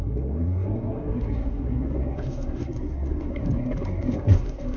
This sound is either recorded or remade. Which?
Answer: remade